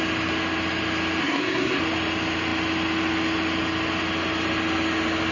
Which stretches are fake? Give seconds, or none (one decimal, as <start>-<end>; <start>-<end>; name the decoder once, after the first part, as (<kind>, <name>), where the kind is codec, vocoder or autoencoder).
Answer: 1.2-1.8 (codec, SNAC)